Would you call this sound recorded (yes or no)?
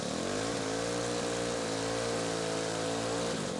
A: yes